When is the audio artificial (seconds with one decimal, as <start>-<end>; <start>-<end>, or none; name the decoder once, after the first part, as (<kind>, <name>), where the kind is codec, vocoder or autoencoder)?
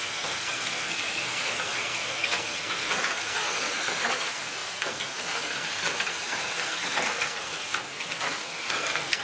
0.0-9.2 (codec, SNAC)